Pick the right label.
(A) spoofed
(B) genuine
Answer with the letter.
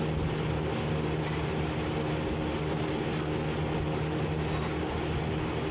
B